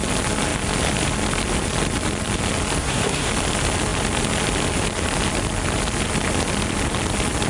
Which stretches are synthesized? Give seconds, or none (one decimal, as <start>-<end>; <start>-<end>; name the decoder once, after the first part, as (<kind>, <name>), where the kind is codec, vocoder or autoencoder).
2.8-3.3 (codec, SNAC)